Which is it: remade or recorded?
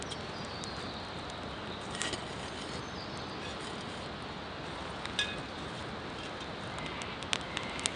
recorded